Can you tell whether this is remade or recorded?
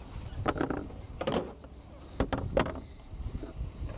recorded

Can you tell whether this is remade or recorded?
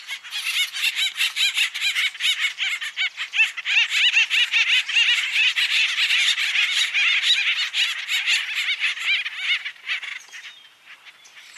recorded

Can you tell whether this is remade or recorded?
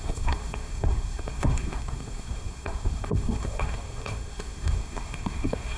remade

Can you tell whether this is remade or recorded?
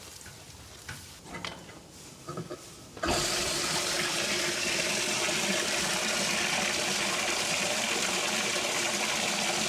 recorded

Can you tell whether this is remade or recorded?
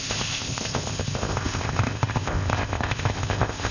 remade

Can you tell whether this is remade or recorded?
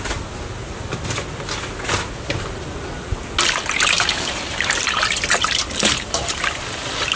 recorded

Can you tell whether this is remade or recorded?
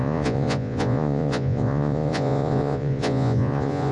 remade